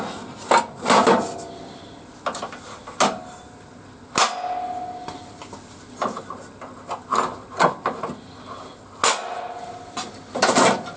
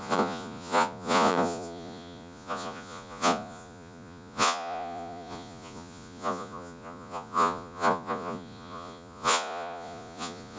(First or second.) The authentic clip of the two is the first